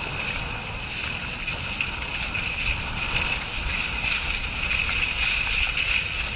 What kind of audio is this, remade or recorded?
recorded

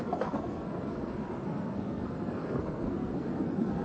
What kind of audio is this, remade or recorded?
remade